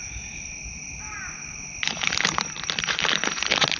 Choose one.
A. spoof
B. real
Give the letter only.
B